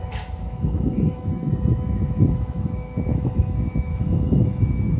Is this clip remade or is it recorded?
remade